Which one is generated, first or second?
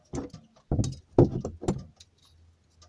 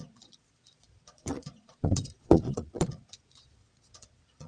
second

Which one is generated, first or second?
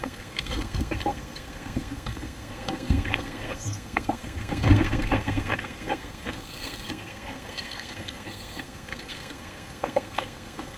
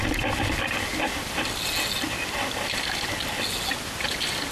first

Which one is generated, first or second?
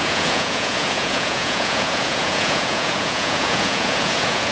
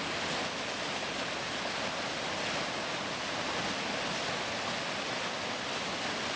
first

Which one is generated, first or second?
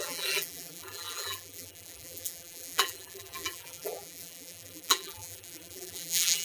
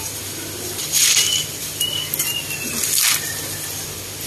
first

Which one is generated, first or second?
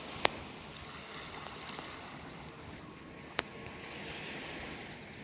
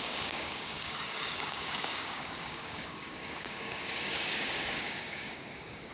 second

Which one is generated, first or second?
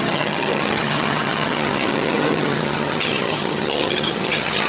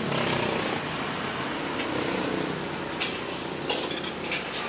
first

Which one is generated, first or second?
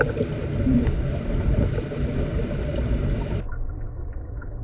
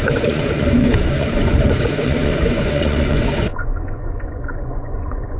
second